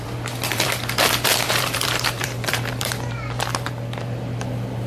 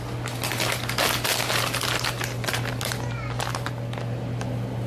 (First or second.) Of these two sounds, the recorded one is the second